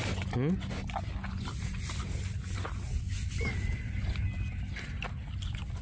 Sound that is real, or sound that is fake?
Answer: real